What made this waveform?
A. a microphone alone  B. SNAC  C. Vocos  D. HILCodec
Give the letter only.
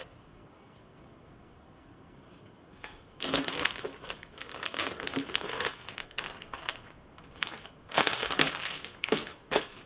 B